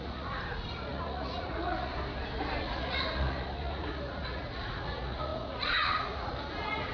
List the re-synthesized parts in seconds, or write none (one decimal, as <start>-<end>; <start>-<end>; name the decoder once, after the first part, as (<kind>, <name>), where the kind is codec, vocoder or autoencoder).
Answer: 0.0-1.9 (vocoder, Vocos); 2.6-6.9